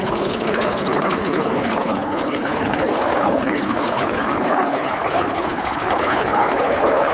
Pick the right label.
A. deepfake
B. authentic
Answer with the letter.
A